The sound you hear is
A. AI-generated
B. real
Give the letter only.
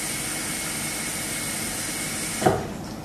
B